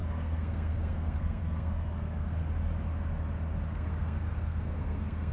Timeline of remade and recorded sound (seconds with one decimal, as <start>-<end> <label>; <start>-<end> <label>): 0.0-2.4 remade; 2.4-3.7 recorded; 3.7-5.3 remade